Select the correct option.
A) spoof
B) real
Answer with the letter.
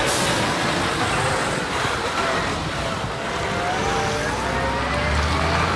B